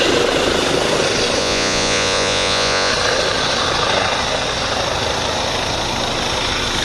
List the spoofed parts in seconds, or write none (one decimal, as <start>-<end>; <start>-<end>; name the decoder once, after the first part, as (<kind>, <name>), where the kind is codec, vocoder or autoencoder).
1.4-2.9 (vocoder, Vocos)